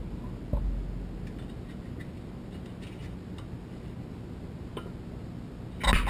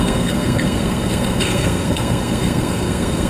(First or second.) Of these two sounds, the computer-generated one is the second